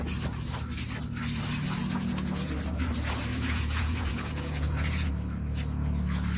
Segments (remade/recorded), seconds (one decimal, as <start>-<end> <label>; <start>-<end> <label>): 0.0-1.8 recorded; 1.8-2.5 remade; 2.5-3.3 recorded; 3.3-5.1 remade; 5.1-6.4 recorded